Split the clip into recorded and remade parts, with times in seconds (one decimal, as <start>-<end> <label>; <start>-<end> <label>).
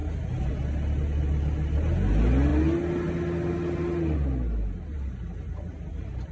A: 0.0-6.3 recorded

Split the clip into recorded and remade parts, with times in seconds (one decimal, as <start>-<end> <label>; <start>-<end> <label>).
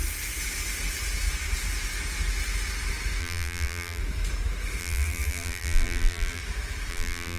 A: 0.0-3.2 recorded; 3.2-4.0 remade; 4.0-4.8 recorded; 4.8-6.4 remade; 6.4-6.9 recorded; 6.9-7.4 remade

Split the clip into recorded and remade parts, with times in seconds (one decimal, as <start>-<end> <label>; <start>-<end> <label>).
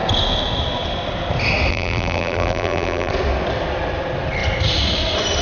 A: 0.0-1.7 recorded; 1.7-3.1 remade; 3.1-5.4 recorded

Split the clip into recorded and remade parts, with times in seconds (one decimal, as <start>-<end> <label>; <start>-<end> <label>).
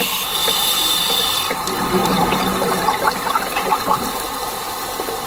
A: 0.0-0.4 recorded; 0.4-1.5 remade; 1.5-5.3 recorded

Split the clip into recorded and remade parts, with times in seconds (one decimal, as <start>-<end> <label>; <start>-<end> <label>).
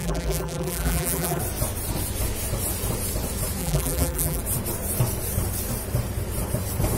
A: 0.0-1.4 remade; 1.4-3.6 recorded; 3.6-4.4 remade; 4.4-7.0 recorded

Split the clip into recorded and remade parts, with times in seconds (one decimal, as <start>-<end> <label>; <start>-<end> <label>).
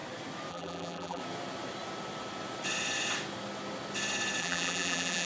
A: 0.0-0.5 recorded; 0.5-1.2 remade; 1.2-4.4 recorded; 4.4-5.3 remade